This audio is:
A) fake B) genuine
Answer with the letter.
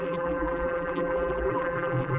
A